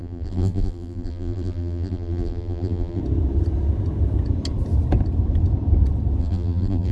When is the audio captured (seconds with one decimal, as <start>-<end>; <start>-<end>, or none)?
3.0-6.2